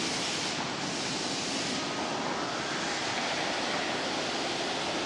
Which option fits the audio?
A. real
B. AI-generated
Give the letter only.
A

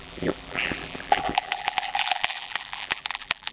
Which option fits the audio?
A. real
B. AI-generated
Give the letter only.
B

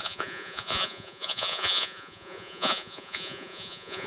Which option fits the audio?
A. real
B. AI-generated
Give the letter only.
B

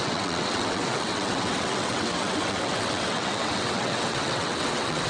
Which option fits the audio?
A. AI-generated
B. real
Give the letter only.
A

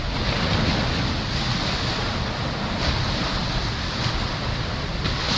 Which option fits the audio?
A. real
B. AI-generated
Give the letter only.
A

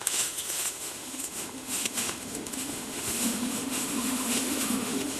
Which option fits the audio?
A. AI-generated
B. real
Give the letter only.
A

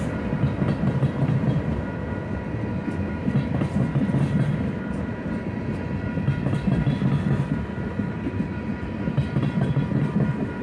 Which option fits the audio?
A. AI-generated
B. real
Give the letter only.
B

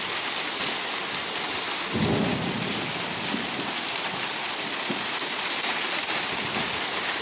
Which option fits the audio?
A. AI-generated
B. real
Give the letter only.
B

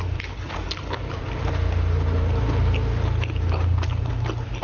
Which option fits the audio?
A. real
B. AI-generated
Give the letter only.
A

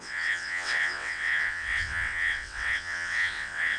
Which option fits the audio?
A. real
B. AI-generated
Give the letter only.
B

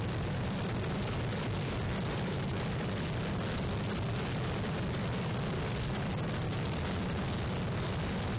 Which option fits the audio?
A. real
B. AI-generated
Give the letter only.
A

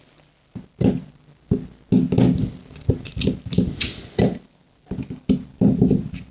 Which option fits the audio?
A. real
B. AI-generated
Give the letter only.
A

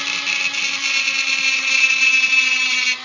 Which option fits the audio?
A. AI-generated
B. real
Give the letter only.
B